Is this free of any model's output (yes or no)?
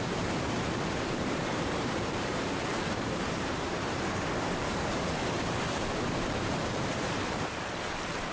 no